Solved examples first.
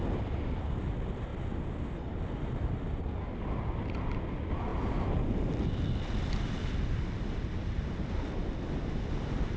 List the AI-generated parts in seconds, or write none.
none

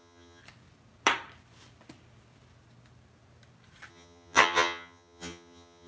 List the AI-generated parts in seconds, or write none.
0.0-0.4 (vocoder, HiFi-GAN); 3.9-5.9

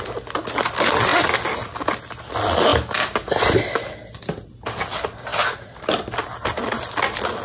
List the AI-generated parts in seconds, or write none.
none